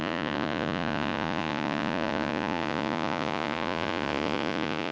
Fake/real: fake